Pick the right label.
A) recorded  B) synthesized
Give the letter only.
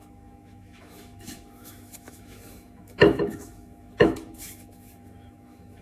B